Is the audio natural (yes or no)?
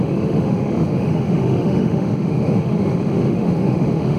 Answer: no